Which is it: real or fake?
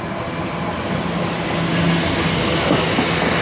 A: real